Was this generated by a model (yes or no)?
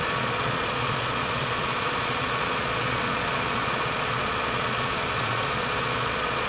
yes